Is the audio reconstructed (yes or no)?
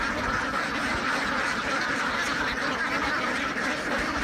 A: no